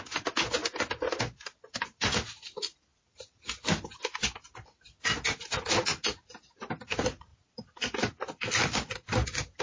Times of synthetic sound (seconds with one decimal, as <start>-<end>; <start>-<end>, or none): 0.6-1.2; 7.3-9.6

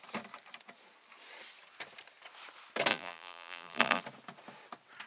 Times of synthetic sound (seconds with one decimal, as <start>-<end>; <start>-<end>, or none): 2.9-4.0